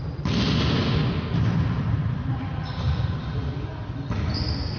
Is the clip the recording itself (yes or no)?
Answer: yes